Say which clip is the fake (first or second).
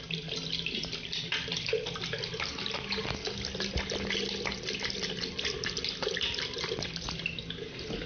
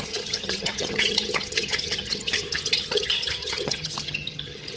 second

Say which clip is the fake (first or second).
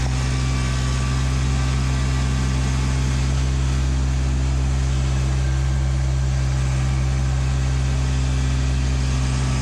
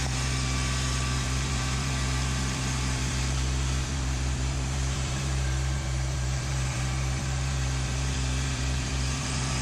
second